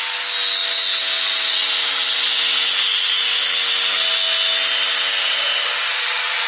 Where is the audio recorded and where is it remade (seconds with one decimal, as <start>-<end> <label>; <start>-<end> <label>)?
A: 0.0-5.2 recorded; 5.2-6.5 remade